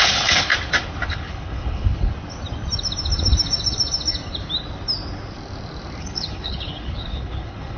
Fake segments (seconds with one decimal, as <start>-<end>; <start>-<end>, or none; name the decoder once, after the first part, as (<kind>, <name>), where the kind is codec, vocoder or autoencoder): 0.0-0.5 (codec, HILCodec); 1.1-2.1; 6.0-7.8